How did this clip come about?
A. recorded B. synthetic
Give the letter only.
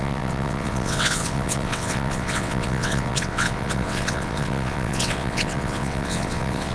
B